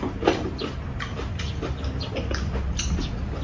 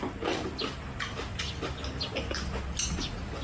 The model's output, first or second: first